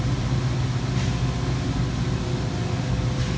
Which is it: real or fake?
real